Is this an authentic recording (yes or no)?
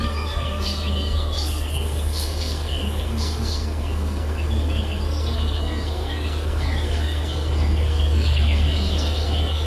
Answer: no